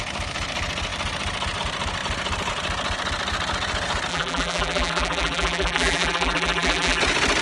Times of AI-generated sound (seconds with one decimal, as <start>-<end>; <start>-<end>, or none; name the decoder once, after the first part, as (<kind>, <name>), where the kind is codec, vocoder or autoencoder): 4.1-7.0 (vocoder, BigVGAN v2)